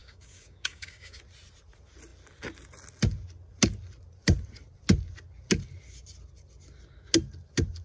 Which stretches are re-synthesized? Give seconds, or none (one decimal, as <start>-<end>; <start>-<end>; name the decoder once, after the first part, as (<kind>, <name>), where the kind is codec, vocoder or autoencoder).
0.0-1.2 (codec, DAC)